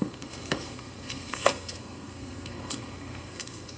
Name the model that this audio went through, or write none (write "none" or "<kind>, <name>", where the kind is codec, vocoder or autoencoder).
codec, SNAC